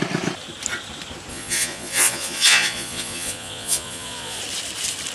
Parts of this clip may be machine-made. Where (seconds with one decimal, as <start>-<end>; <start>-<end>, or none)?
1.3-4.4